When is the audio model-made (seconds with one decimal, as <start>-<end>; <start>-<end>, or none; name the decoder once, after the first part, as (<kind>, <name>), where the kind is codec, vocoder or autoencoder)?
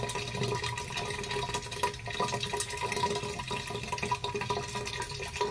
none